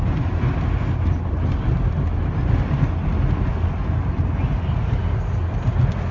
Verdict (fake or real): real